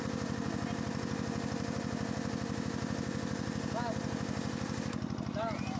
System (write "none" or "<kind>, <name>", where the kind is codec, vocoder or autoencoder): none